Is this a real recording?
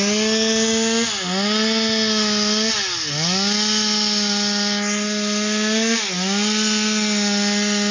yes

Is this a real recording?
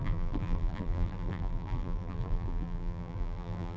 no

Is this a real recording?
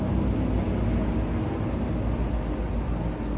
yes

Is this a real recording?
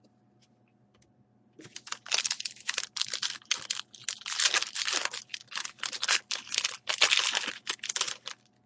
yes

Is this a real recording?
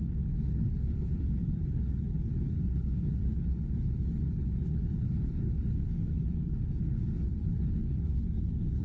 no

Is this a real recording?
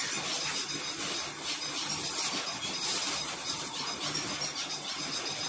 yes